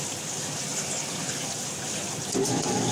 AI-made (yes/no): no